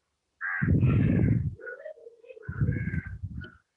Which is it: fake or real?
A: real